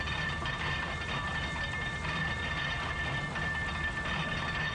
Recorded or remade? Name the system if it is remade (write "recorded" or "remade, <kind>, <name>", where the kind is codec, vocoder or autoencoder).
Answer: recorded